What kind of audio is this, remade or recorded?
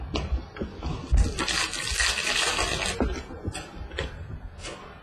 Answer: recorded